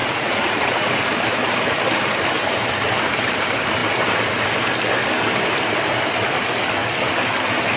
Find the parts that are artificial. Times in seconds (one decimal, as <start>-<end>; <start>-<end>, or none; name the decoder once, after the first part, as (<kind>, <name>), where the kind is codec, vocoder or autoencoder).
0.0-1.1 (vocoder, Vocos)